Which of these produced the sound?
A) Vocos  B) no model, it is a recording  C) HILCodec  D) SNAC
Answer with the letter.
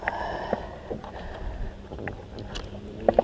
B